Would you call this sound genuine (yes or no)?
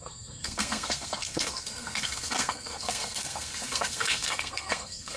no